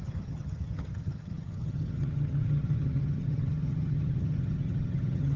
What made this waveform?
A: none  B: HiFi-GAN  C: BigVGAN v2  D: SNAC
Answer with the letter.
B